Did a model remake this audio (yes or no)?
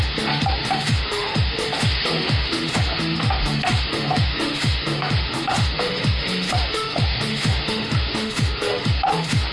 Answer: yes